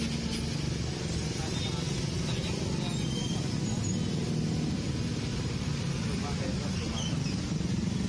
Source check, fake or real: real